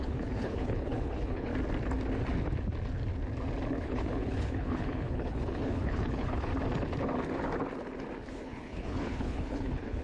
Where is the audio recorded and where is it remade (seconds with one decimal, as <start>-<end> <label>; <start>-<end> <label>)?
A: 0.0-1.5 remade; 1.5-3.7 recorded; 3.7-6.5 remade; 6.5-8.3 recorded; 8.3-10.0 remade